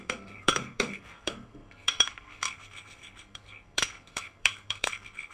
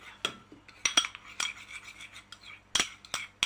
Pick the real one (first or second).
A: second